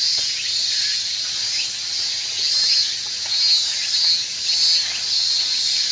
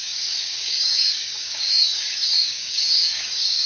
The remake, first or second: second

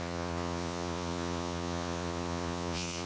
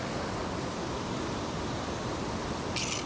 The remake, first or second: first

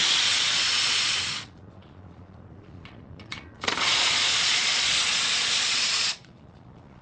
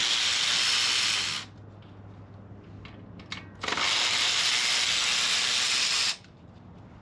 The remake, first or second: first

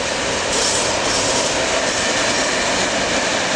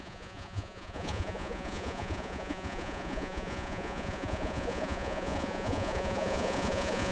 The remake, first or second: second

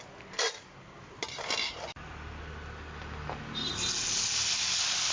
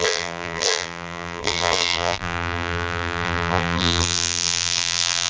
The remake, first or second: second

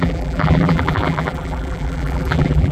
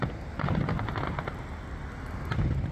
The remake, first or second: first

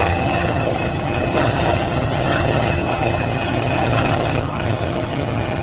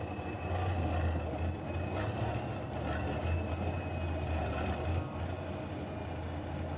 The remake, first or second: first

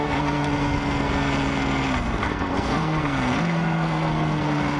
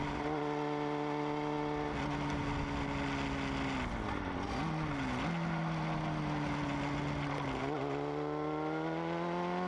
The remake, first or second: first